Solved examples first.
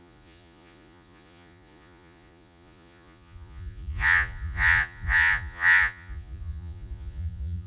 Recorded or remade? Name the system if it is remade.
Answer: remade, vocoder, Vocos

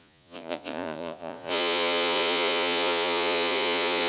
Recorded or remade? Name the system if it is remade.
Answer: remade, vocoder, Vocos